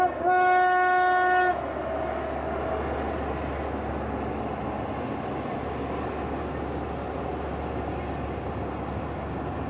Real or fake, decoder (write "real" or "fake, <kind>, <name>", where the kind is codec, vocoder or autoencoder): real